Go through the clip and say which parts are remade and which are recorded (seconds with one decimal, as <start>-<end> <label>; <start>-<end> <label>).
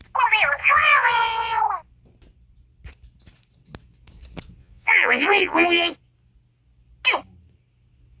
0.0-0.6 recorded; 0.6-1.6 remade; 1.6-4.6 recorded; 4.6-6.0 remade; 6.0-8.2 recorded